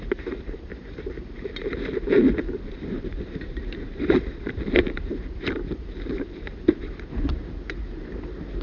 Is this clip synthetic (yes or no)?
yes